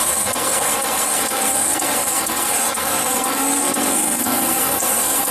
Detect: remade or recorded remade